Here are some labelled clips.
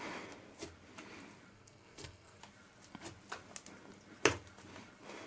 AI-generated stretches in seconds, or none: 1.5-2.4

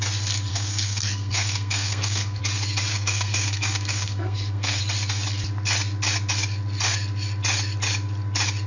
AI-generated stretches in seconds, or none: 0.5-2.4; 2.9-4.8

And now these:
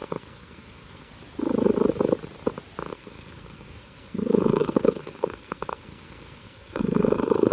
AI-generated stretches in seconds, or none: 0.0-1.1; 2.9-7.5

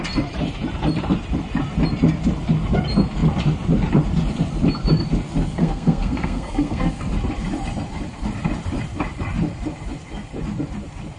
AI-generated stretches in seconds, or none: 5.6-7.1

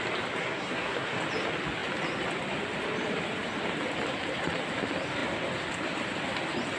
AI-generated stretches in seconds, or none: 0.4-1.2

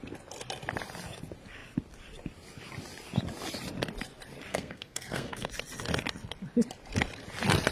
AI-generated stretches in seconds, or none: 4.5-5.5

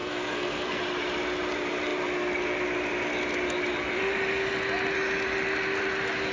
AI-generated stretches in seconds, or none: 0.0-0.8